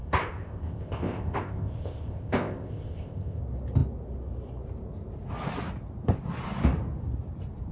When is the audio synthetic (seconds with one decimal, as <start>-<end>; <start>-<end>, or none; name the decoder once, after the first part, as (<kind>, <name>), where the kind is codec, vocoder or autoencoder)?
0.0-3.4 (codec, ZipCodec)